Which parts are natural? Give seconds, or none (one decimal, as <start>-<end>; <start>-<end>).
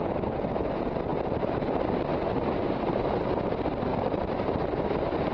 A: 0.0-1.1; 3.4-3.9; 4.7-5.3